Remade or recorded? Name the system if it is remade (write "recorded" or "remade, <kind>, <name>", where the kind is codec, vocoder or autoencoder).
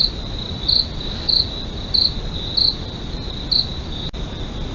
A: recorded